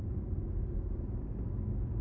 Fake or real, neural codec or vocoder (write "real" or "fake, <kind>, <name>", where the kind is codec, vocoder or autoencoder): real